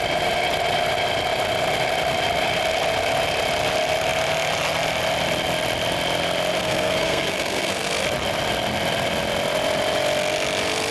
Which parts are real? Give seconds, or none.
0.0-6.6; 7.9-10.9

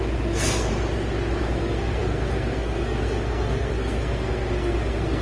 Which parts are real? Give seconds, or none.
0.7-1.4

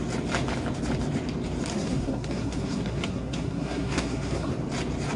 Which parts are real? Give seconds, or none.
0.0-1.7; 4.5-5.2

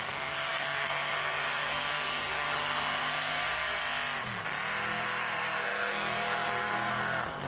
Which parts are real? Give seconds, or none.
3.8-4.8

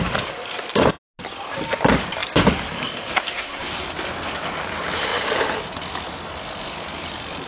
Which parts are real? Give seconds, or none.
0.0-7.5

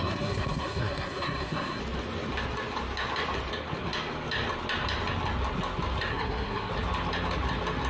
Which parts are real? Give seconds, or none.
1.8-6.1; 6.7-7.9